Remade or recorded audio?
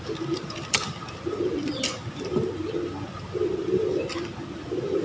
recorded